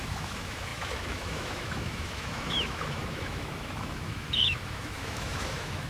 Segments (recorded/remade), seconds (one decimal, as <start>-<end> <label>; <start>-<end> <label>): 0.0-5.9 remade